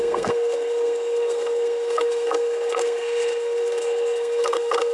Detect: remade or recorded remade